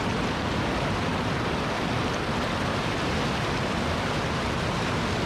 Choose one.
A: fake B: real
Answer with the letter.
B